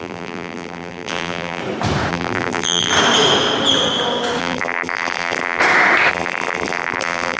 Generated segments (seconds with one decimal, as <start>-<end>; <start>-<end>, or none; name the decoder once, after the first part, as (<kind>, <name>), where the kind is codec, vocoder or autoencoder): 0.0-1.6 (vocoder, BigVGAN v2); 2.1-2.9; 4.4-5.6; 6.1-7.4